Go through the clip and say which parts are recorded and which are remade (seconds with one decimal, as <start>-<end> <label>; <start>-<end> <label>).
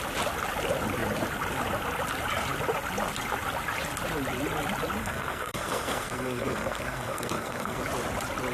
0.0-5.0 recorded; 5.0-7.8 remade; 7.8-8.5 recorded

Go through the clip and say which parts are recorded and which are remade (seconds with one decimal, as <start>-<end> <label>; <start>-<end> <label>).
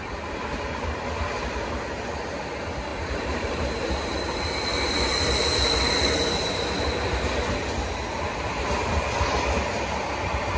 0.0-2.9 recorded; 2.9-7.2 remade; 7.2-10.6 recorded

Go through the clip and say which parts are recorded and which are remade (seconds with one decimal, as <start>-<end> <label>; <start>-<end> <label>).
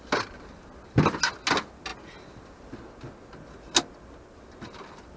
0.0-5.2 recorded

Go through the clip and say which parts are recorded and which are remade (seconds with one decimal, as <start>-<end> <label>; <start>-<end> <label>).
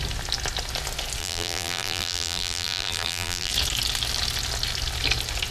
0.0-1.2 recorded; 1.2-3.5 remade; 3.5-5.5 recorded